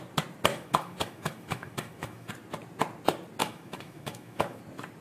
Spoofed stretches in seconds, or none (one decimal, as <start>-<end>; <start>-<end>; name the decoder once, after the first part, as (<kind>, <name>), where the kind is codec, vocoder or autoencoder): 0.5-2.3 (autoencoder, DAC-VAE); 3.4-4.6

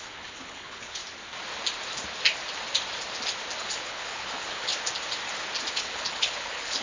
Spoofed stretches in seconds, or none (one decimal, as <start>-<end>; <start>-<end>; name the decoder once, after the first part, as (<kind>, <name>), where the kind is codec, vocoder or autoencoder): 0.0-1.0 (codec, HILCodec); 3.6-4.7; 5.7-6.8

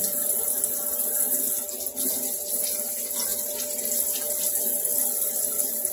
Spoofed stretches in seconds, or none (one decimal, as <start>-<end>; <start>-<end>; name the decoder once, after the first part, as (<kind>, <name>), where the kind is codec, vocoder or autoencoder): none

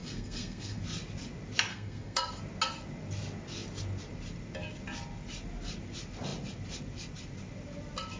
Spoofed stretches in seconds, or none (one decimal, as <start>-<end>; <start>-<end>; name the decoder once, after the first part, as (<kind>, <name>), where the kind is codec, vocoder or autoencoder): 0.0-0.8 (codec, SNAC); 1.7-2.4